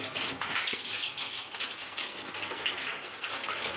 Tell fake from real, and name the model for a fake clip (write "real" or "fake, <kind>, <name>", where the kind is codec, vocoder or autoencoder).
fake, codec, SNAC